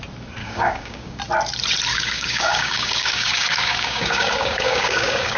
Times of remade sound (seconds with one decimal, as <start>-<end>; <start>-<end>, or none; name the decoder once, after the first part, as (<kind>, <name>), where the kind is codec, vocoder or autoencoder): 0.4-1.2 (codec, DAC); 1.9-5.4

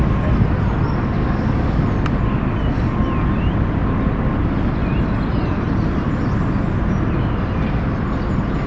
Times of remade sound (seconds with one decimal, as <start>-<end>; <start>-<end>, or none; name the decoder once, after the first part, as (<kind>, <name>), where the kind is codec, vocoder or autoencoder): 1.2-1.8 (codec, DAC)

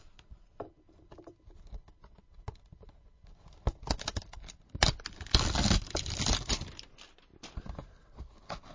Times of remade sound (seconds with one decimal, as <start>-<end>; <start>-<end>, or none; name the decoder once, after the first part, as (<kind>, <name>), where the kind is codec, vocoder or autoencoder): none

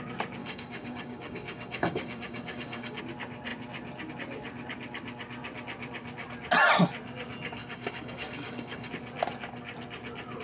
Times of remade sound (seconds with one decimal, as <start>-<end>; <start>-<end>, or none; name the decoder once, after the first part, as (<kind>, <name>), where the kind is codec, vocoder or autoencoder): 0.4-3.0 (codec, DAC); 7.6-8.9